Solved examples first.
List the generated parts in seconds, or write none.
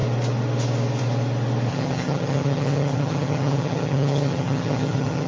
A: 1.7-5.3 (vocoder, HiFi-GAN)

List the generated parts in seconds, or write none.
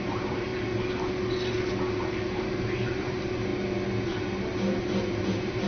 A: 0.0-0.5 (vocoder, BigVGAN v2); 2.0-3.5; 4.8-5.7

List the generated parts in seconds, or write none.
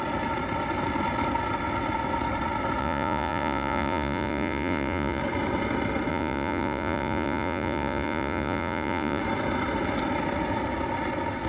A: 2.8-5.2 (vocoder, Vocos); 6.1-9.2